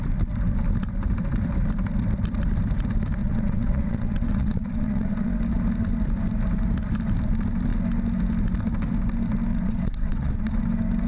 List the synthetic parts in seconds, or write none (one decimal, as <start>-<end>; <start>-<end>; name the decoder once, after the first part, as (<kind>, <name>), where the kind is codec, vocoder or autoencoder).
3.2-5.3 (vocoder, WaveNeXt); 9.5-10.6